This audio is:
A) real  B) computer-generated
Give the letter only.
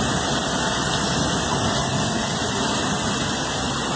A